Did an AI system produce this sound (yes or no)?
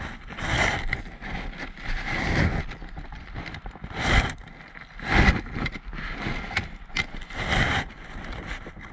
no